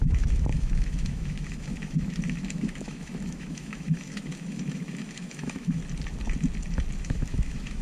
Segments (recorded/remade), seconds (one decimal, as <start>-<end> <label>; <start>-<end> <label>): 0.0-5.8 remade; 5.8-7.0 recorded; 7.0-7.8 remade